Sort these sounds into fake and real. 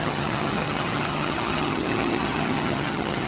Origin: fake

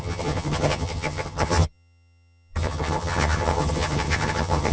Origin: fake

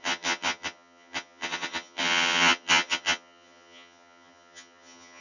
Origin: fake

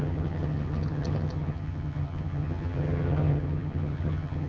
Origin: fake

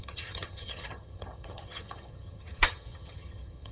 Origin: fake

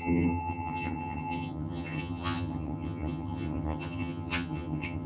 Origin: fake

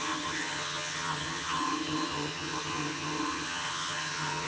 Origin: fake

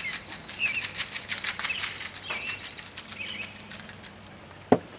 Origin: real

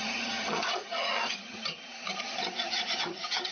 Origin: fake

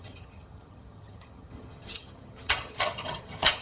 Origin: fake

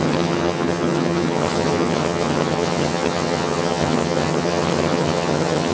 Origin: fake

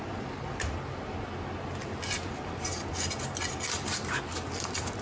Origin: real